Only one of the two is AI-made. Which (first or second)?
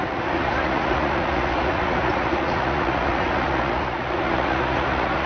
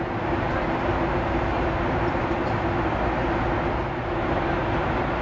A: first